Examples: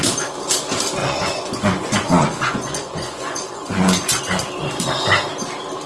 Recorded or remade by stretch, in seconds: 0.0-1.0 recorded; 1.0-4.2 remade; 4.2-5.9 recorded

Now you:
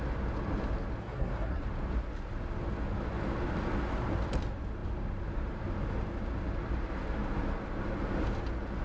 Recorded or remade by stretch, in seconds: 0.0-1.0 recorded; 1.0-1.6 remade; 1.6-8.8 recorded

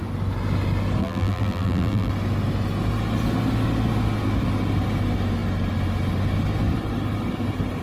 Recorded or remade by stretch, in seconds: 0.0-1.0 recorded; 1.0-2.1 remade; 2.1-7.8 recorded

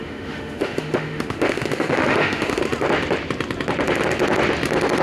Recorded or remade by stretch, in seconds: 0.0-2.6 remade; 2.6-5.0 recorded

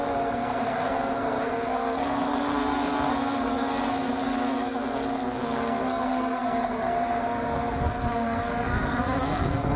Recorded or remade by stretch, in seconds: 0.0-9.8 remade